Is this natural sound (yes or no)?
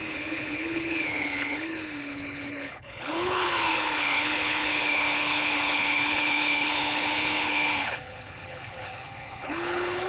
no